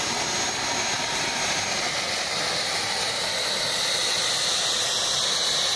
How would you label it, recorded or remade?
recorded